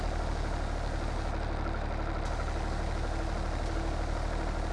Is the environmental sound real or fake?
real